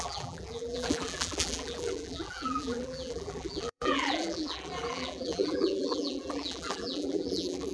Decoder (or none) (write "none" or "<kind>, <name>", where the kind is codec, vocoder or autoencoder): vocoder, BigVGAN v2